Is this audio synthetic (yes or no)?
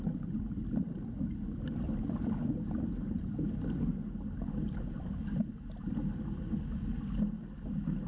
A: no